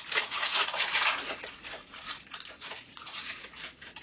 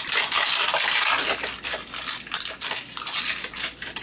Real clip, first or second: second